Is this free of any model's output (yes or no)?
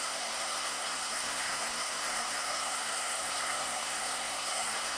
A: no